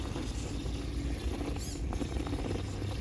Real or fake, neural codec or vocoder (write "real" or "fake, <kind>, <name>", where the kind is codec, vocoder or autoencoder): real